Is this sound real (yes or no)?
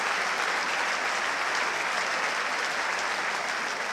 yes